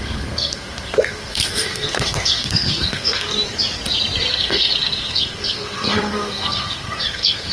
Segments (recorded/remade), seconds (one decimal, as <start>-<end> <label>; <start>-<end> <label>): 0.0-3.3 remade; 3.3-4.3 recorded; 4.3-7.5 remade